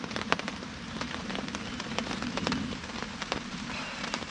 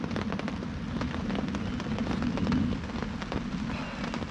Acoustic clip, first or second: second